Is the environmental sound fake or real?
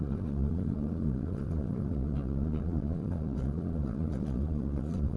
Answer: fake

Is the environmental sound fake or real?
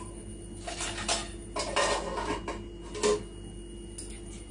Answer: real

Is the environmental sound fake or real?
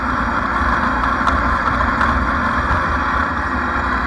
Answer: real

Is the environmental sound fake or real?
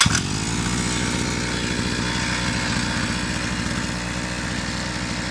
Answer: real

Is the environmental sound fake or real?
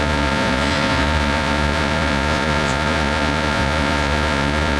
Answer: fake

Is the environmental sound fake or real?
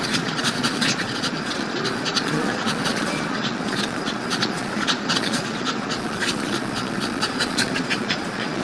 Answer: fake